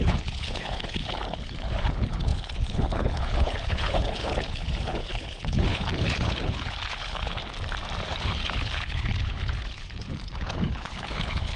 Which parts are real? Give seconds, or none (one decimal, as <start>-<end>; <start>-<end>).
7.4-8.2